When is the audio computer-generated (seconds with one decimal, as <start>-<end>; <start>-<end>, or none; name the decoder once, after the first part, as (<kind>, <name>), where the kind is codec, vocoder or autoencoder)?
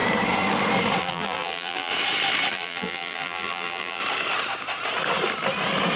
1.0-1.9 (vocoder, BigVGAN v2); 2.5-4.0